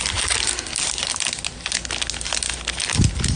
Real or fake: real